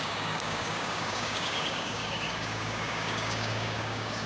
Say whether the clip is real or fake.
fake